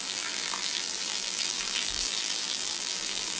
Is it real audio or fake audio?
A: fake